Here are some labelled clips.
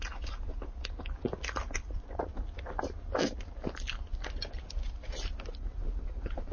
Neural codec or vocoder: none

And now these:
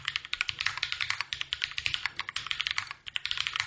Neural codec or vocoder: none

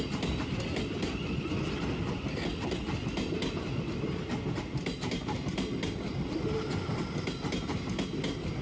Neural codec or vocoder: none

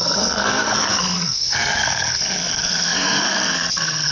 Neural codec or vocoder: codec, SNAC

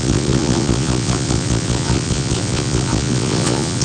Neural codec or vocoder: vocoder, Vocos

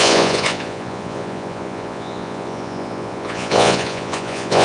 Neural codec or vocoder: vocoder, Vocos